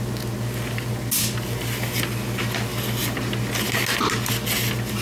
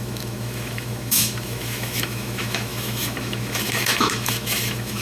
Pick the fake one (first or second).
second